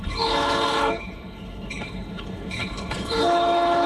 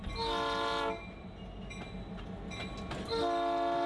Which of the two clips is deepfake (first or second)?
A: first